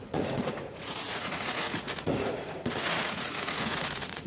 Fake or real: fake